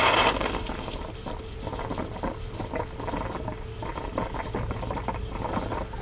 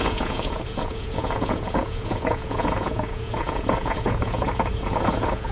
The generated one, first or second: second